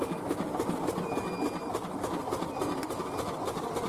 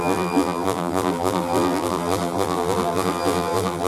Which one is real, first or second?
first